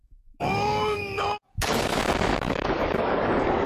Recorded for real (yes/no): no